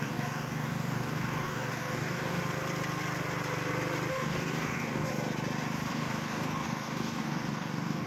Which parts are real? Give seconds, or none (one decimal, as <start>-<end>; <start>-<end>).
2.4-4.1; 5.1-5.9

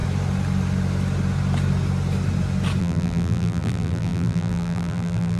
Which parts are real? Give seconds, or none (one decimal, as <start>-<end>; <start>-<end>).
0.0-2.8

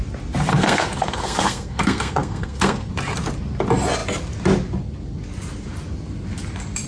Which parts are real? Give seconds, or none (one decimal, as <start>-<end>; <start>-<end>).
0.0-0.5; 2.9-6.9

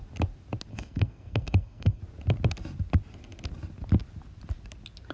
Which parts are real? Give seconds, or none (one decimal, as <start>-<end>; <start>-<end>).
0.0-0.7; 2.0-5.1

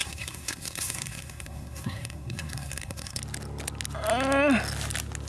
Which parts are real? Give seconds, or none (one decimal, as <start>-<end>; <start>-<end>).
3.2-5.3

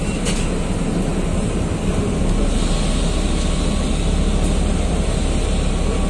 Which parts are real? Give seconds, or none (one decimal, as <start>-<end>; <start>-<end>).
0.0-6.1

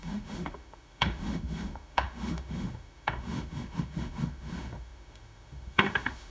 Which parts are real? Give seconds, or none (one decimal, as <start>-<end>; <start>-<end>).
none

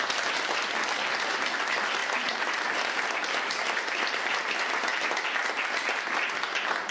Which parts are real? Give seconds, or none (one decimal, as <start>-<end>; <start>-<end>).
0.0-6.9